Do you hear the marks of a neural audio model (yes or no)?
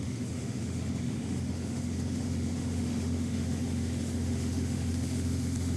yes